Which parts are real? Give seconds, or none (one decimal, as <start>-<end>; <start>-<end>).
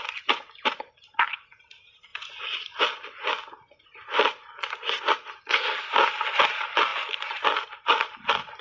0.0-8.6